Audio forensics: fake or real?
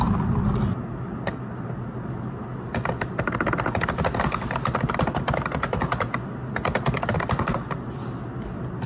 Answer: real